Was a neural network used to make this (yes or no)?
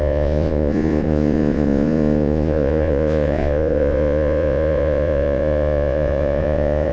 yes